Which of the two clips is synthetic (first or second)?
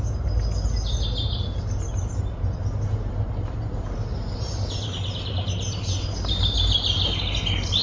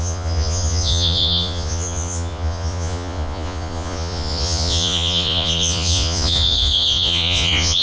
second